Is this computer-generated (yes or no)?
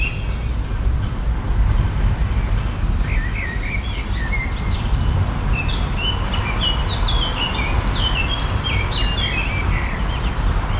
no